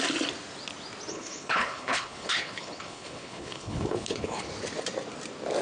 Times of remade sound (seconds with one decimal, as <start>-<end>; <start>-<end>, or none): 1.1-4.5